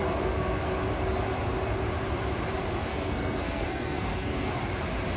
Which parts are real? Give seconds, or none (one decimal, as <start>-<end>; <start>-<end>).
0.7-2.9; 4.5-5.2

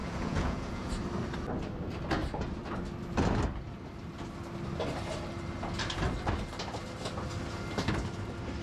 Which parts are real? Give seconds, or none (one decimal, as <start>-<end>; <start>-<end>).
0.9-8.6

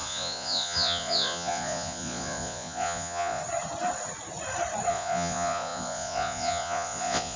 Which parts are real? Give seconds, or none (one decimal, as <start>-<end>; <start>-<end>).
3.4-4.9

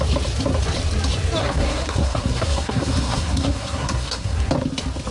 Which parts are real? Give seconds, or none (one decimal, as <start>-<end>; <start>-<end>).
0.0-1.4; 4.5-5.1

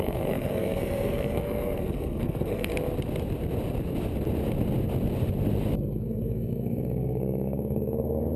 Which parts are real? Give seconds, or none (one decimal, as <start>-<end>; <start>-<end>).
2.7-5.8